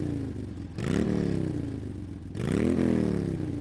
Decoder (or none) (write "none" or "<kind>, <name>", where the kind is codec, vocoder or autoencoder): none